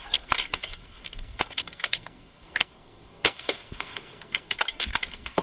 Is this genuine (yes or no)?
no